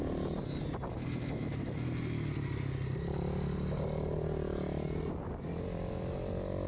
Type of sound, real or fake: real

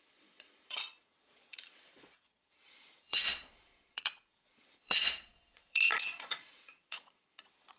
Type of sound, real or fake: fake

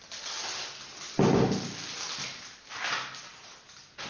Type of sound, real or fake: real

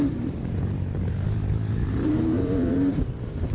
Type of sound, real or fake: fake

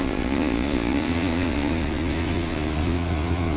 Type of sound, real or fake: fake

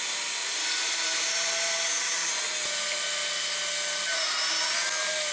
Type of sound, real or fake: real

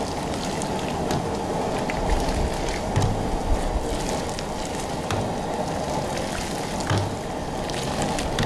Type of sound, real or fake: real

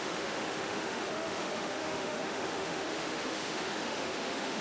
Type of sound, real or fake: fake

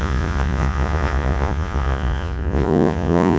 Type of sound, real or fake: fake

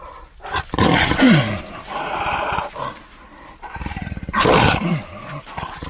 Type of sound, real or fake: real